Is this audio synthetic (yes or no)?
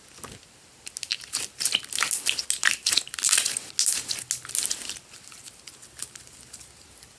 no